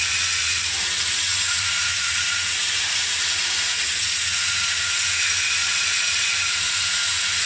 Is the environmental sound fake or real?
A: fake